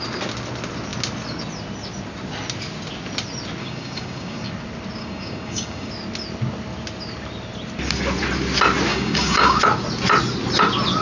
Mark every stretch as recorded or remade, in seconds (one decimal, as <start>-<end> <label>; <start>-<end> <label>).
0.0-3.6 recorded; 3.6-4.5 remade; 4.5-5.0 recorded; 5.0-5.9 remade; 5.9-8.9 recorded; 8.9-9.6 remade; 9.6-11.0 recorded

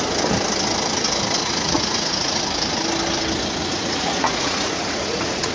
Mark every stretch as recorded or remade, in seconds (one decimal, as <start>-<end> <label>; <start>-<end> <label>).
0.0-1.4 recorded; 1.4-2.4 remade; 2.4-3.6 recorded; 3.6-5.5 remade

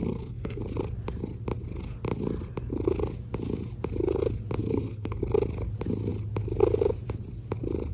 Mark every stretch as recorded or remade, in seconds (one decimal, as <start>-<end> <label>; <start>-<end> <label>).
0.0-0.6 remade; 0.6-4.6 recorded; 4.6-5.2 remade; 5.2-7.9 recorded